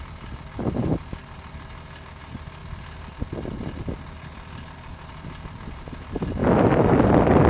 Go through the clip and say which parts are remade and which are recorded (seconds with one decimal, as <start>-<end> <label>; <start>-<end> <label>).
0.0-7.5 recorded